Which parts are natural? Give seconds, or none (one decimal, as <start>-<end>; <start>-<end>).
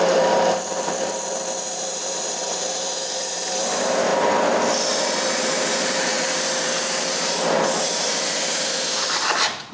4.1-5.4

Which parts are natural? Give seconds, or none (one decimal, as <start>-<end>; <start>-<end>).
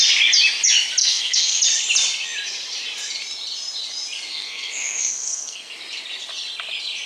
0.0-1.0; 1.6-4.3; 5.7-7.1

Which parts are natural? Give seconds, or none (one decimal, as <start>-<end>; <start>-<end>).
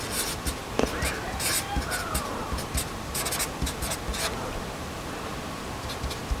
0.0-6.4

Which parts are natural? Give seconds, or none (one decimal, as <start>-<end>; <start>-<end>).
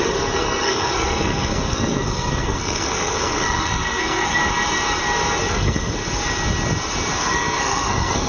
4.4-5.5; 6.0-7.2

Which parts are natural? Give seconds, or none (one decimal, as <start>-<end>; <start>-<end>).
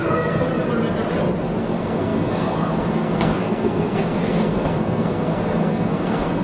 0.5-1.6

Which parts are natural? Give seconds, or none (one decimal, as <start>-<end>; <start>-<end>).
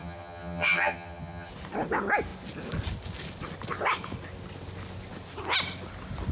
1.5-6.3